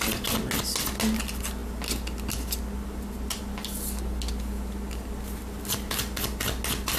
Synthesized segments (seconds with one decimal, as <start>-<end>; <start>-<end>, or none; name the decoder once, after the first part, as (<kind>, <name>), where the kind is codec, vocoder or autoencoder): none